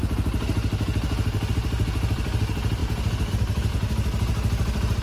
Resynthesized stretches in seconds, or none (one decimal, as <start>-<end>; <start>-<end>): 1.5-3.7